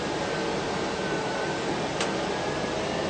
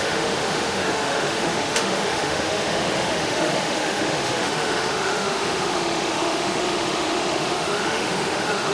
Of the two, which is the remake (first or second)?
second